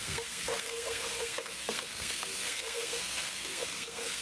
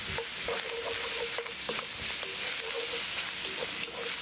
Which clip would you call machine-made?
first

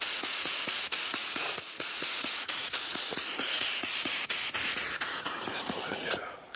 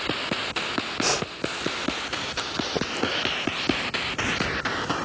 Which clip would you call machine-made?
first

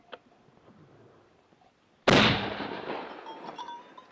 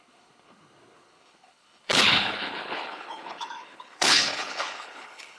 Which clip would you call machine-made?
second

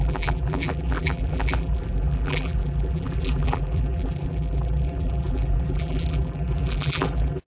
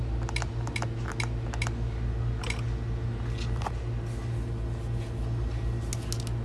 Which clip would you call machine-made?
first